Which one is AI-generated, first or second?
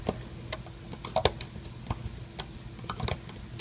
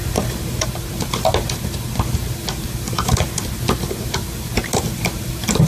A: second